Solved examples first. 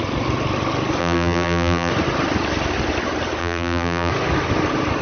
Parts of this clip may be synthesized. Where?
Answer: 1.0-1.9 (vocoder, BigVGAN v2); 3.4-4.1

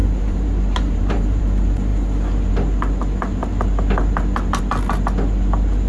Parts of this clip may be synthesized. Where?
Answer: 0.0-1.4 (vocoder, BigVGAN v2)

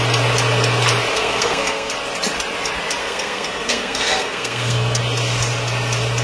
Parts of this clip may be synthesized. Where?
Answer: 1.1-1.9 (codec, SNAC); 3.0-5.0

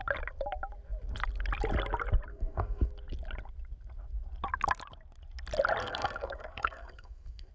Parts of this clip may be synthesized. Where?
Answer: 2.3-2.9 (codec, SNAC); 5.8-7.5

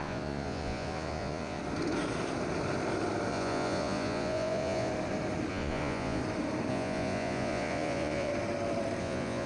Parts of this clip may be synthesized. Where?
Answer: 0.0-1.6 (vocoder, Vocos); 3.3-4.9; 5.5-6.2; 6.7-8.3; 9.0-9.5